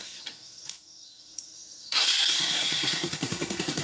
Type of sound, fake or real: fake